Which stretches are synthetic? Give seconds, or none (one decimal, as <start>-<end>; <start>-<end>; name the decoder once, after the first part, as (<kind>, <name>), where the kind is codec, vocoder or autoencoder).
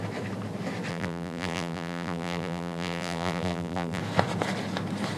0.9-4.0 (vocoder, BigVGAN v2)